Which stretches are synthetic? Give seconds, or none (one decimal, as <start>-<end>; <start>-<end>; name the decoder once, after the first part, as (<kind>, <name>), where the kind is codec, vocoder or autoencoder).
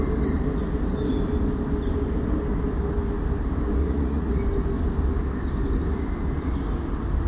3.8-4.4 (vocoder, Vocos)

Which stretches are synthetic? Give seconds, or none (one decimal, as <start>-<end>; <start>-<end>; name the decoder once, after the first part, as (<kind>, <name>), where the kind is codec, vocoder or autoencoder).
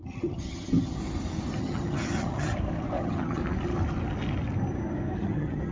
0.0-1.0 (vocoder, HiFi-GAN); 1.6-2.5; 3.0-3.4; 5.2-5.7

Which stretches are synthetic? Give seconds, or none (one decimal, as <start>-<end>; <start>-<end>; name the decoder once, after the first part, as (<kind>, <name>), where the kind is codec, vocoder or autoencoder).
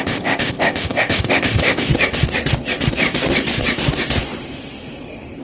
0.0-1.9 (codec, ZipCodec)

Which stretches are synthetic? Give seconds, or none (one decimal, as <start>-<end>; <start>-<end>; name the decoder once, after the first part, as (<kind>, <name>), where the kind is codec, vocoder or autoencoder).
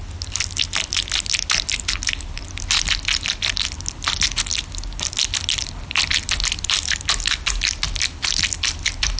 none